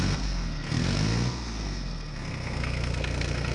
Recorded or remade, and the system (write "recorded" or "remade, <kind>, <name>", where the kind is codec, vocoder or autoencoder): remade, codec, SNAC